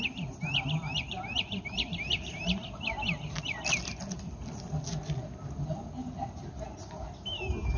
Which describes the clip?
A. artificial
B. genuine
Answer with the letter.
B